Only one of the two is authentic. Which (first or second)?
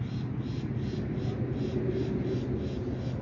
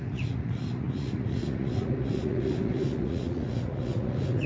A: first